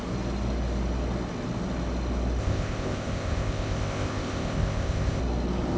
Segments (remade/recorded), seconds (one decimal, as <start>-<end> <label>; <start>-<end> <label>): 0.0-2.4 recorded; 2.4-5.2 remade; 5.2-5.8 recorded